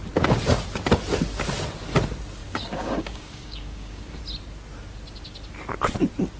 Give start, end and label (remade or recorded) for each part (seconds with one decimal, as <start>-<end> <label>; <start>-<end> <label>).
0.0-2.4 recorded; 2.4-4.2 remade; 4.2-6.4 recorded